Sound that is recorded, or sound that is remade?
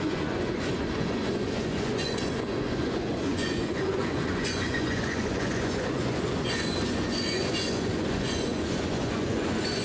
remade